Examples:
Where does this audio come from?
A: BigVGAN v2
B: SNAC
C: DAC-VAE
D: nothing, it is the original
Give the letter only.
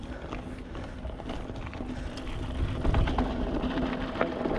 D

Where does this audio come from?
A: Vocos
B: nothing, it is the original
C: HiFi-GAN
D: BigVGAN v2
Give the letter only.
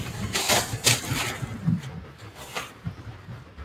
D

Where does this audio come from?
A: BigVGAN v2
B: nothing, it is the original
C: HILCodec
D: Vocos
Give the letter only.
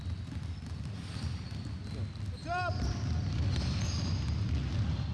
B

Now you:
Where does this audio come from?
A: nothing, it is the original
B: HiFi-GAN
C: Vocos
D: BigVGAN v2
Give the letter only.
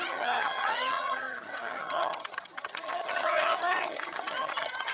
B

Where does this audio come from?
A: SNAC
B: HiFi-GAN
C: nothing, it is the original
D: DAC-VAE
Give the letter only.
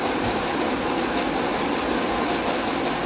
C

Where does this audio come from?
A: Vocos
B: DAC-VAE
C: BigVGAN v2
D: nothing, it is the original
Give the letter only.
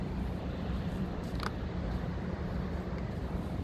C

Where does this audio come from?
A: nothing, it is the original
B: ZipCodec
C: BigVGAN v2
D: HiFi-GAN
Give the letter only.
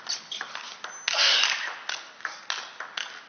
A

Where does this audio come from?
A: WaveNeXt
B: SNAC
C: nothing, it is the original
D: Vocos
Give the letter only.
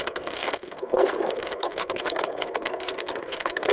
B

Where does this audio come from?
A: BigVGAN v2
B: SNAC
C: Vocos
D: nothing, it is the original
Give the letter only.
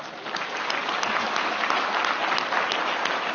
D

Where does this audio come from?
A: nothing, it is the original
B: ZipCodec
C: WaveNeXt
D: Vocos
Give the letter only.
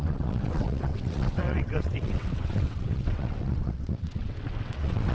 C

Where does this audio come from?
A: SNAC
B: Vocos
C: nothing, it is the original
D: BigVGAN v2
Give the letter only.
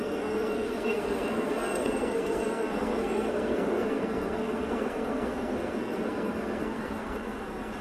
A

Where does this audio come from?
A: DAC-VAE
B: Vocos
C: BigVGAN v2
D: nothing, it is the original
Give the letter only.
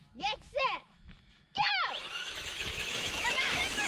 A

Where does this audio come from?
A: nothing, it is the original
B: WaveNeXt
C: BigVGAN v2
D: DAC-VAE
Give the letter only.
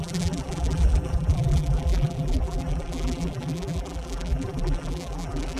C